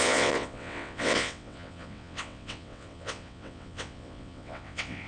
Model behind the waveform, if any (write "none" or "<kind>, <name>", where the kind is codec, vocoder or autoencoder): vocoder, WaveNeXt